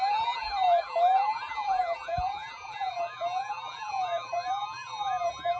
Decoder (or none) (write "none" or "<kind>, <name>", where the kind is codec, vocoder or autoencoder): vocoder, BigVGAN v2